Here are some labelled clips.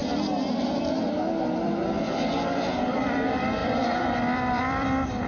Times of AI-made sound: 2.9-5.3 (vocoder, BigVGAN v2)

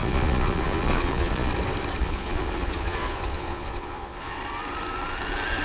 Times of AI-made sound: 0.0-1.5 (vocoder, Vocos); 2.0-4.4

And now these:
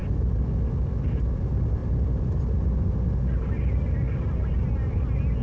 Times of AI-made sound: none

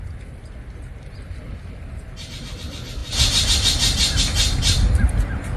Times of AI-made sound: none

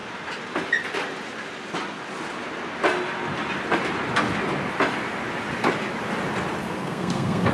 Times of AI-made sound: 6.6-7.5 (codec, SNAC)

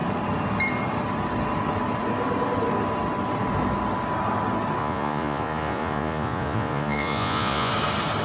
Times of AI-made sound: 4.8-7.7 (vocoder, Vocos)

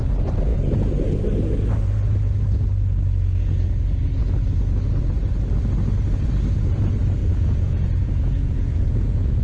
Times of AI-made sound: 7.2-9.4 (vocoder, Vocos)

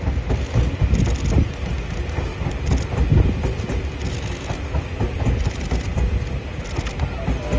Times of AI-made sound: none